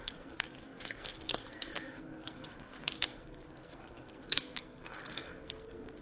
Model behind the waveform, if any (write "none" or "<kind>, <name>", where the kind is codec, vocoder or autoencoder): codec, SNAC